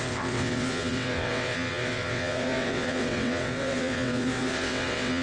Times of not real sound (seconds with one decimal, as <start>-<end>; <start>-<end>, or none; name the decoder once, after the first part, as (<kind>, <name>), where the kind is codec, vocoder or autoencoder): 0.0-5.2 (vocoder, WaveNeXt)